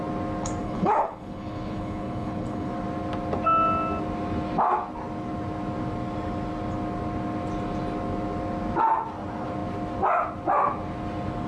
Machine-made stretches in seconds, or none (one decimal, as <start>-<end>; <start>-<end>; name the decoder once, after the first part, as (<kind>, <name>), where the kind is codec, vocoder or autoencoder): 0.6-2.7 (codec, HILCodec)